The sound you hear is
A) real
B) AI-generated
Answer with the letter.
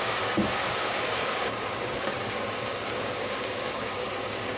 B